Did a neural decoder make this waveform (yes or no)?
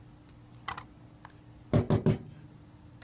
no